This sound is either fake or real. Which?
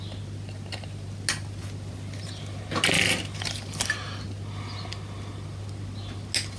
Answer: real